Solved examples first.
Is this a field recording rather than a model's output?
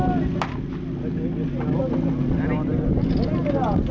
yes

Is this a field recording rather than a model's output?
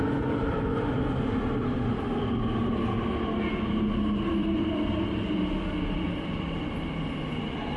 yes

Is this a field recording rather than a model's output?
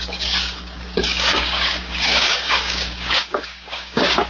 no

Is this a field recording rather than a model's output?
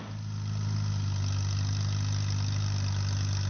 yes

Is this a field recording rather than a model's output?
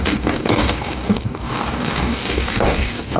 no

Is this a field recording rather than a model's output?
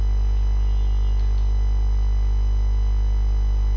yes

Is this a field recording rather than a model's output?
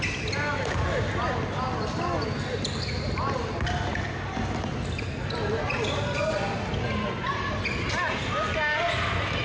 yes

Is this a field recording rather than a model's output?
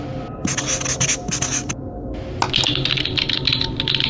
yes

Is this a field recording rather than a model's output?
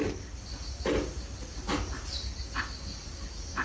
yes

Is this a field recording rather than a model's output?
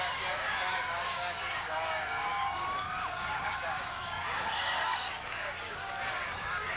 no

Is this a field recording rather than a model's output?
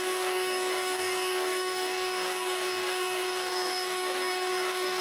no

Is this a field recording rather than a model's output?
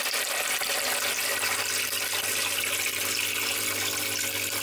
yes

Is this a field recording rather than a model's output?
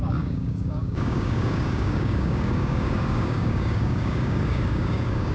no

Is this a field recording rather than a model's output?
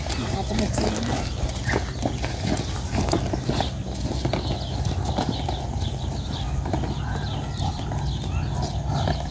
yes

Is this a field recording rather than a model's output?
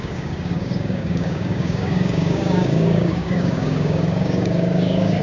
no